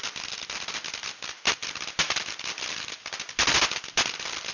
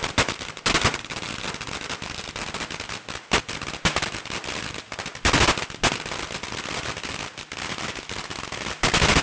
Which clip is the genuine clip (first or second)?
second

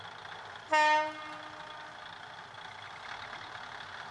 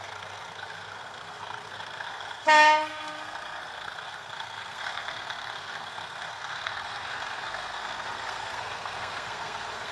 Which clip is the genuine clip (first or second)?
first